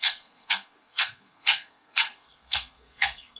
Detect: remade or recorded remade